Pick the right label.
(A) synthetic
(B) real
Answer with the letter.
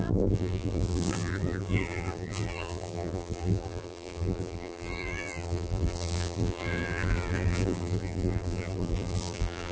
A